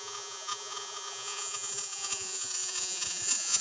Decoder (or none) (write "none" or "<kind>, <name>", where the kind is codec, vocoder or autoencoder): vocoder, Vocos